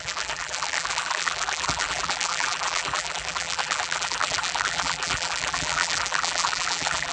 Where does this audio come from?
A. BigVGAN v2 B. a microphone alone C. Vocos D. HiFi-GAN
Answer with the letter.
A